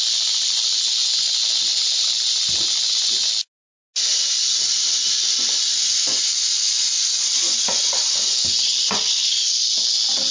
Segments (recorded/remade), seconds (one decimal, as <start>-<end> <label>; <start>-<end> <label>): 0.0-10.3 recorded

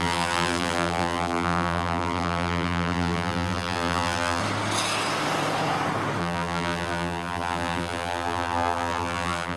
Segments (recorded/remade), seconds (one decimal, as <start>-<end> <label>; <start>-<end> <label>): 0.0-4.4 remade; 4.4-6.2 recorded; 6.2-9.6 remade